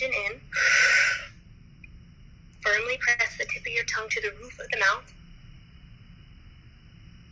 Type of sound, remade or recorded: recorded